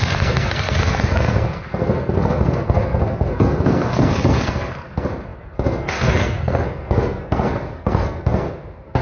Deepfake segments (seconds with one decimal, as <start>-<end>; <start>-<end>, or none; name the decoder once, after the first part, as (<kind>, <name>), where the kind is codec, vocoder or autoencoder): 0.0-9.0 (codec, SNAC)